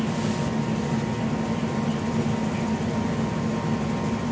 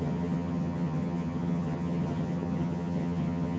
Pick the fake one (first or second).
second